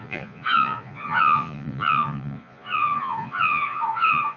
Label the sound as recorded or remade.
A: remade